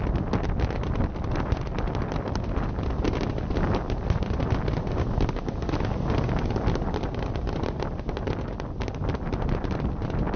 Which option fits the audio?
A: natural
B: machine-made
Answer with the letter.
A